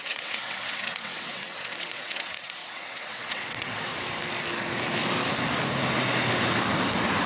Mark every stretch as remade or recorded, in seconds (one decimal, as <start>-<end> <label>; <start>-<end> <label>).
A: 0.0-3.9 remade; 3.9-7.3 recorded